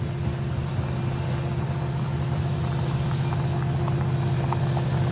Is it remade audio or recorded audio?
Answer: recorded